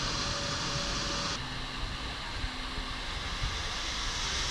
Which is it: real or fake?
real